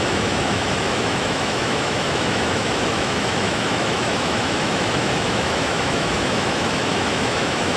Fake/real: fake